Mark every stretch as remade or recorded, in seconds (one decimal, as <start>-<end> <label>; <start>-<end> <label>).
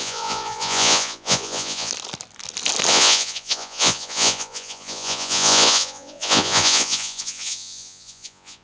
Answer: 0.0-1.9 remade; 1.9-2.9 recorded; 2.9-8.6 remade